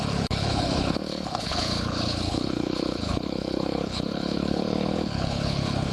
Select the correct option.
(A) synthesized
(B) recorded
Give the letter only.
A